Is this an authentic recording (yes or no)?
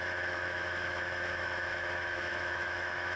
no